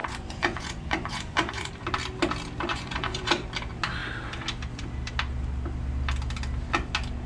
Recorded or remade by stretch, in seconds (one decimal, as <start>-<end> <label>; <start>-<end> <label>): 0.0-1.7 remade; 1.7-2.7 recorded; 2.7-3.3 remade; 3.3-7.3 recorded